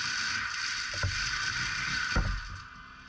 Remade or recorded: recorded